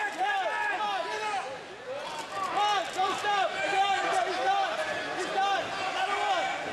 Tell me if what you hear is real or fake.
real